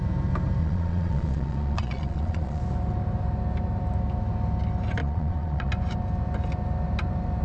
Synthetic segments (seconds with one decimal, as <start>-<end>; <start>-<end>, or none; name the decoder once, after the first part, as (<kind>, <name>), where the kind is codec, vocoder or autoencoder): 0.6-2.6 (vocoder, Vocos); 5.0-5.7